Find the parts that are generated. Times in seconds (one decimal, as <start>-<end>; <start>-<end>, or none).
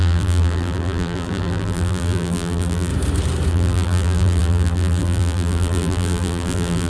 0.0-2.9; 3.5-6.9